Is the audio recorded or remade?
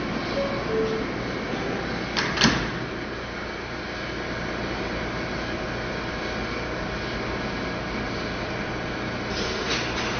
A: recorded